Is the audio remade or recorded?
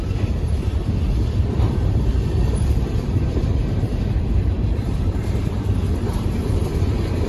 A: remade